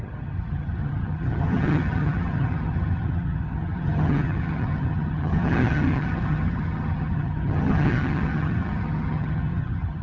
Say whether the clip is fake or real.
fake